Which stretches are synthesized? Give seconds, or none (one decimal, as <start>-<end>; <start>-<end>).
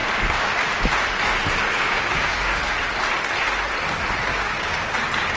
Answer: 0.0-0.5; 1.7-2.6; 4.3-4.9